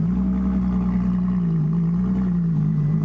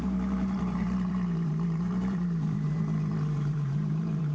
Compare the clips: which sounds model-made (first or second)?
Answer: second